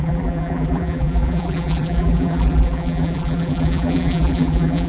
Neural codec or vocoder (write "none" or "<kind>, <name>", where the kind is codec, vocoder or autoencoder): vocoder, BigVGAN v2